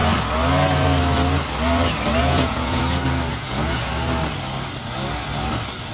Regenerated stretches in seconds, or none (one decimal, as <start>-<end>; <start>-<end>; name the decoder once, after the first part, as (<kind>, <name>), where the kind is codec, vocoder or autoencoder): 2.2-2.8 (vocoder, Vocos); 3.3-3.9